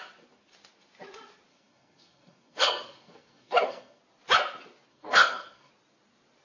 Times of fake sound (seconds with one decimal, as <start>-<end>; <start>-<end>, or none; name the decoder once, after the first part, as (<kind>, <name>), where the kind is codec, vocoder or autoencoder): 1.5-4.0 (codec, SNAC); 4.9-5.7